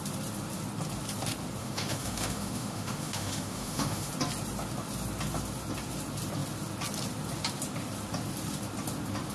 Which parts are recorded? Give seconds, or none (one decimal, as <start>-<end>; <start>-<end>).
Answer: 0.0-1.6; 4.1-9.3